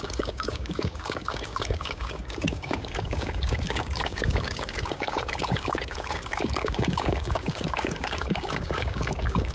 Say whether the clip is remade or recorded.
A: remade